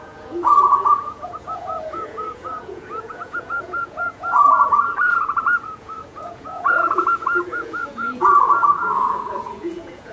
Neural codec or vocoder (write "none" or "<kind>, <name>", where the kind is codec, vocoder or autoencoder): vocoder, Vocos